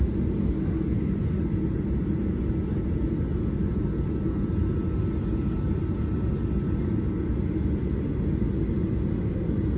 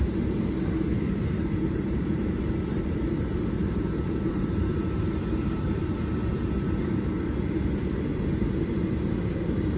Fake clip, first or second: second